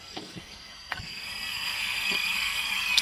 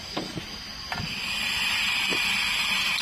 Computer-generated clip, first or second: first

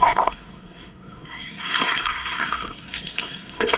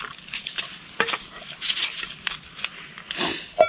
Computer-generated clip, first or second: first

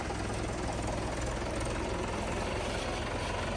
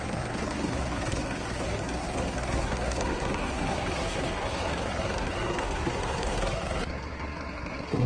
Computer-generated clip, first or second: second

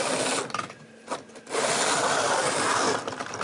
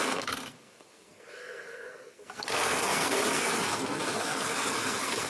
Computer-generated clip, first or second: second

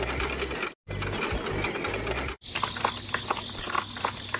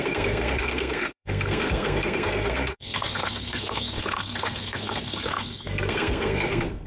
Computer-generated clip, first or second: second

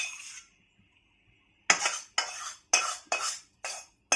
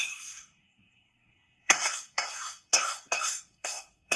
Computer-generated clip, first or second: second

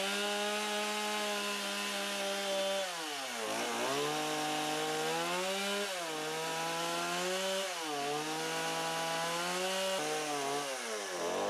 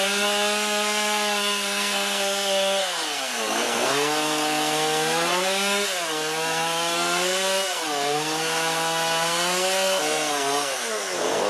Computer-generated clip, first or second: second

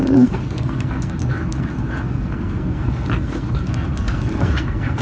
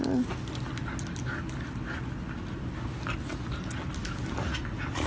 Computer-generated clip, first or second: first